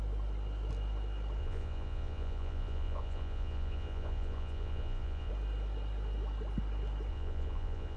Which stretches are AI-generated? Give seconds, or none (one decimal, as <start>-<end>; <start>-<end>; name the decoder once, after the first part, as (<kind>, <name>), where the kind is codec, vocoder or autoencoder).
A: 1.4-5.3 (vocoder, Vocos); 7.1-8.0